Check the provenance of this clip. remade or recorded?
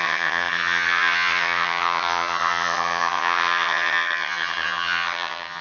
remade